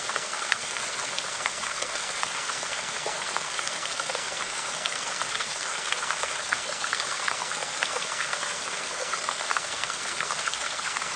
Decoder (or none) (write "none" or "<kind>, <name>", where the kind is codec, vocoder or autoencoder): codec, SNAC